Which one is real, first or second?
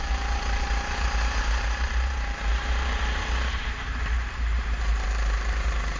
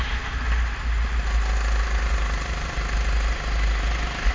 second